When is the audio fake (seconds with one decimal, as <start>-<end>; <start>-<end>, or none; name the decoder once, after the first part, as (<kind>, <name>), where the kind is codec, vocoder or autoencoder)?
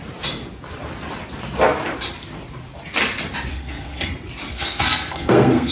3.5-4.1 (codec, SNAC); 4.5-5.7